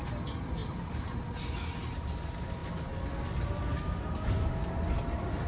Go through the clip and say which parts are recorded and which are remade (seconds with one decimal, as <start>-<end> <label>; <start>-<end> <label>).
0.0-0.6 recorded; 0.6-1.3 remade; 1.3-5.5 recorded